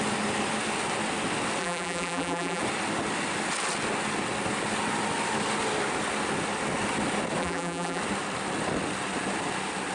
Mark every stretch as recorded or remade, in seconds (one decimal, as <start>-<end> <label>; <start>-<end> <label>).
0.0-1.6 recorded; 1.6-2.6 remade; 2.6-7.4 recorded; 7.4-8.0 remade; 8.0-9.9 recorded